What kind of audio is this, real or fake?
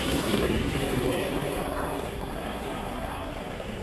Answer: fake